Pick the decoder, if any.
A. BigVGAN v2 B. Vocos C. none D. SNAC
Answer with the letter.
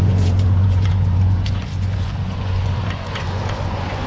B